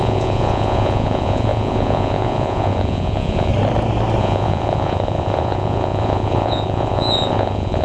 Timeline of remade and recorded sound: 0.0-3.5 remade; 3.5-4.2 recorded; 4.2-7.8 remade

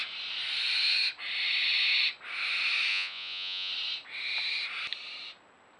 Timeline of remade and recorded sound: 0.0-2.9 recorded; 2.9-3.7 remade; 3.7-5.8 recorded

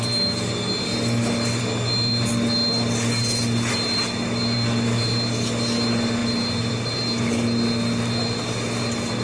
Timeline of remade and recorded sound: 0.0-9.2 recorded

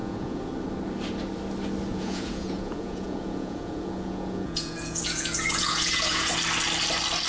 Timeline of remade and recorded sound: 0.0-0.5 remade; 0.5-1.9 recorded; 1.9-6.3 remade; 6.3-7.3 recorded

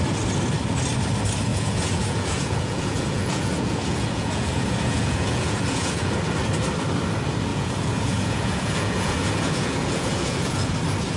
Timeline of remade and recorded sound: 0.0-1.5 recorded; 1.5-6.1 remade; 6.1-7.5 recorded; 7.5-10.7 remade; 10.7-11.2 recorded

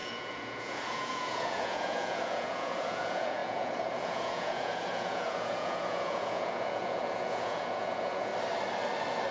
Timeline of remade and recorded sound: 0.0-8.3 remade; 8.3-9.3 recorded